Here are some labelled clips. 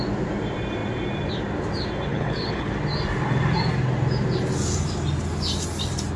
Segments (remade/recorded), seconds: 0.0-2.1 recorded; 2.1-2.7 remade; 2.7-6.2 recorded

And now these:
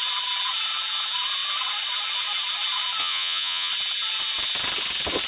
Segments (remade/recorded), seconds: 0.0-3.0 recorded; 3.0-3.7 remade; 3.7-5.3 recorded

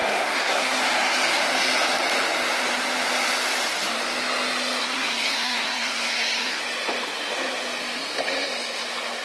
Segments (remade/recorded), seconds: 0.0-0.8 remade; 0.8-4.8 recorded; 4.8-6.6 remade; 6.6-9.2 recorded